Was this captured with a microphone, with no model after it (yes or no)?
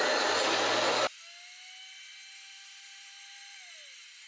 yes